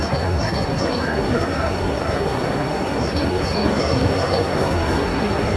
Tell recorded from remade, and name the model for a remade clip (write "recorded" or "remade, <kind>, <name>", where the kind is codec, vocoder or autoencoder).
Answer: remade, codec, SNAC